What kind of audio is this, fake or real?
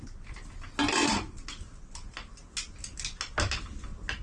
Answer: real